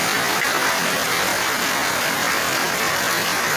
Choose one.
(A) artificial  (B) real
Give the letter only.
B